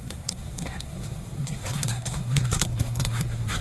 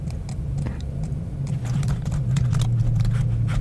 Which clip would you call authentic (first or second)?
second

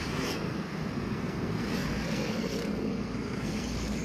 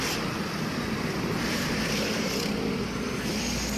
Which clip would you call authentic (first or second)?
second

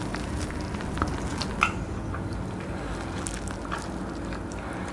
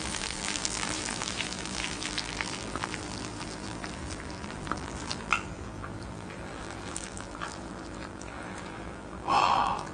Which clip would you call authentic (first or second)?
first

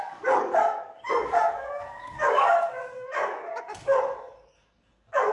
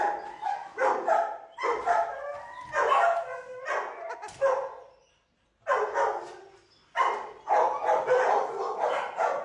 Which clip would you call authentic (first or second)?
second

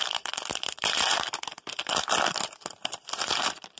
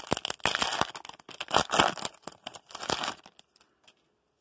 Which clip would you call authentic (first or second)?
second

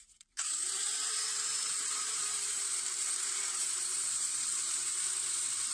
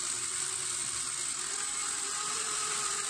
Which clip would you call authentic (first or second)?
second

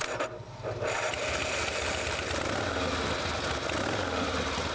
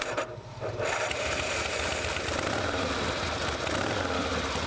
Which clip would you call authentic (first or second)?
first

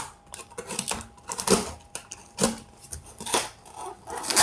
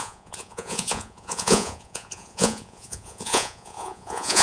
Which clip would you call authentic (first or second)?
first